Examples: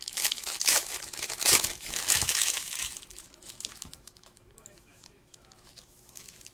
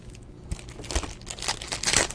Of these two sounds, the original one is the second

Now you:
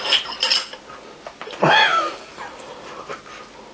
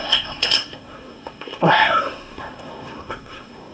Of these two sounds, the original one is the first